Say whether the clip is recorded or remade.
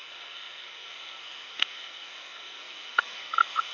remade